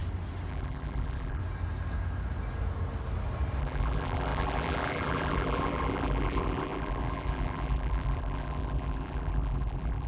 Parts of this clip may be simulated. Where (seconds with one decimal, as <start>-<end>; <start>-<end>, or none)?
0.5-1.4; 3.6-10.1